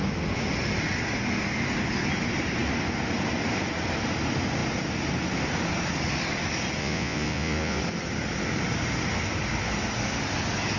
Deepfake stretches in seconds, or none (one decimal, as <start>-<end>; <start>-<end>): 6.8-7.8